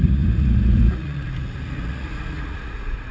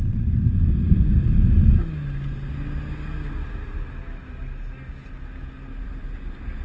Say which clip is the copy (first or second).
first